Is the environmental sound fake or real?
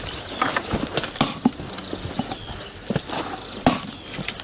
real